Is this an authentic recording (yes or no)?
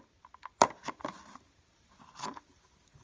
yes